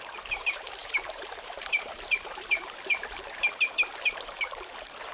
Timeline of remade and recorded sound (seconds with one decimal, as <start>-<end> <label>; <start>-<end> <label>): 0.0-5.1 remade

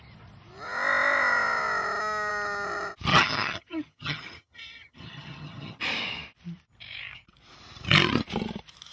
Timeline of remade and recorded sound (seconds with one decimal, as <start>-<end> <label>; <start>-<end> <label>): 0.0-3.1 recorded; 3.1-5.8 remade; 5.8-8.9 recorded